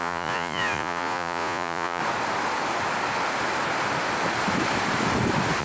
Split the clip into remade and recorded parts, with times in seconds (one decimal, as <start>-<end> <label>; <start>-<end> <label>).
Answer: 0.0-2.0 remade; 2.0-5.6 recorded